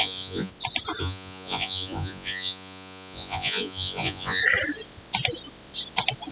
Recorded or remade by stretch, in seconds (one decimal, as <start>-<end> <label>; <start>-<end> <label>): 0.0-0.5 remade; 0.5-1.0 recorded; 1.0-4.4 remade; 4.4-6.3 recorded

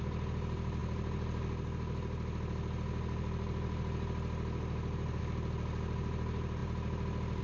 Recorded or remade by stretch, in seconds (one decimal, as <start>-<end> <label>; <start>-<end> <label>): 0.0-7.4 recorded

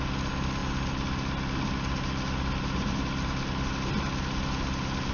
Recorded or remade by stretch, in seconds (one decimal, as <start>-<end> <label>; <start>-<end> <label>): 0.0-5.1 recorded